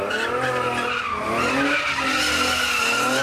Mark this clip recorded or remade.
recorded